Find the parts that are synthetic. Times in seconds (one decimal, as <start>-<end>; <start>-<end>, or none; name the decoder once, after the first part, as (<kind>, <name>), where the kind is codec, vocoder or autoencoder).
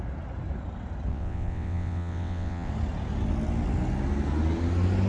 1.1-2.7 (vocoder, WaveNeXt)